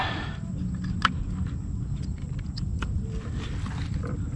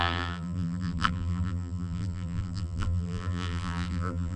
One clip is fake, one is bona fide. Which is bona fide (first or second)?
first